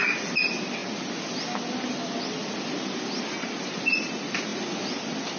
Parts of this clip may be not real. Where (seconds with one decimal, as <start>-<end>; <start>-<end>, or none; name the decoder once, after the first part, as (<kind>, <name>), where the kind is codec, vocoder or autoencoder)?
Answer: none